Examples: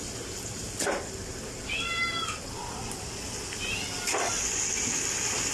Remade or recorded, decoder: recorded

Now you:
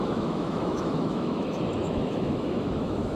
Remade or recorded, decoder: remade, autoencoder, DAC-VAE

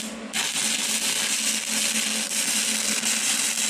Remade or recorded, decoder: recorded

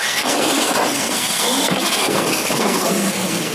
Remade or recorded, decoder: remade, codec, SNAC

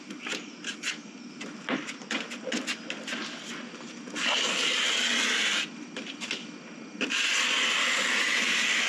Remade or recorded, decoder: recorded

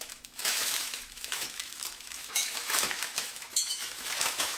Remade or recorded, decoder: remade, autoencoder, DAC-VAE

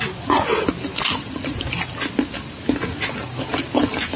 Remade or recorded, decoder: recorded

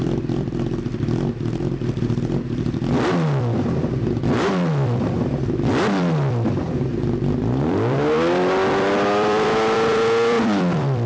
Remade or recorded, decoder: remade, vocoder, BigVGAN v2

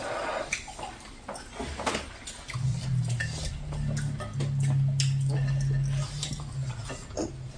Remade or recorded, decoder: recorded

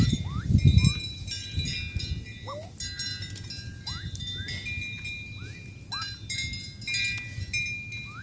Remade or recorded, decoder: recorded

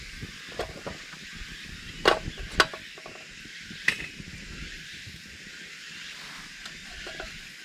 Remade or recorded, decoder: recorded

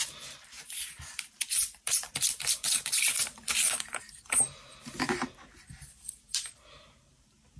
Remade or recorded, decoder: remade, vocoder, BigVGAN v2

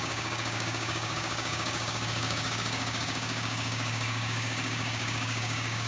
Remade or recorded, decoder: remade, codec, DAC